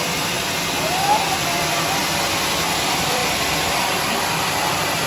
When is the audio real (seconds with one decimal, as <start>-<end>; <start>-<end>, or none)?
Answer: 2.0-2.5